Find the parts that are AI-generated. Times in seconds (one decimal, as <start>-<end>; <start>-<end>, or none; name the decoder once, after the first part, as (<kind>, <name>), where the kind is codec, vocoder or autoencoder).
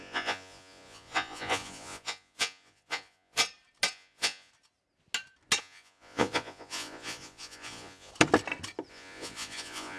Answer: 0.0-3.4 (vocoder, Vocos); 3.9-4.5; 5.6-8.1; 8.9-10.0